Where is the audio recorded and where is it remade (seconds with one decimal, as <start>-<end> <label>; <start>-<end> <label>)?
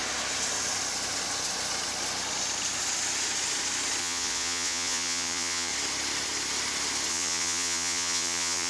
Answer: 0.0-4.0 recorded; 4.0-5.7 remade; 5.7-7.1 recorded; 7.1-8.7 remade